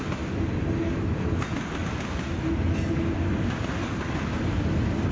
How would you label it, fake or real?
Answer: real